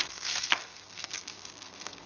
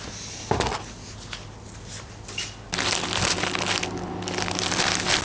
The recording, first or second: second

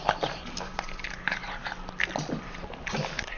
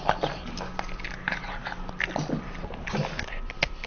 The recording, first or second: second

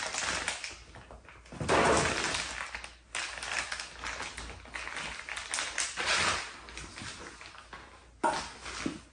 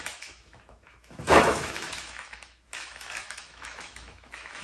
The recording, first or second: first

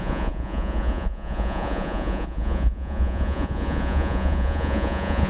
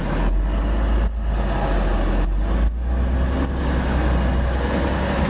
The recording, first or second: second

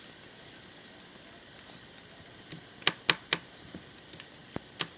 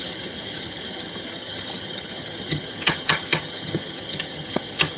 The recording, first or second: first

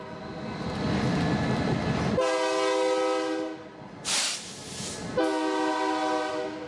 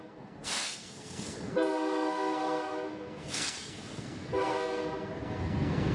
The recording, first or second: first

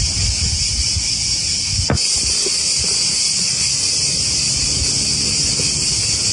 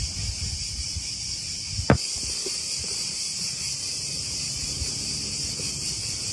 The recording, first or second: first